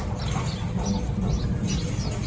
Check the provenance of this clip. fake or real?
real